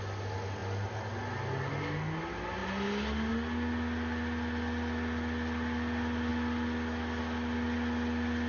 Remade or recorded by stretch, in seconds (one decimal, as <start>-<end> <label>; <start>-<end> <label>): 0.0-8.5 recorded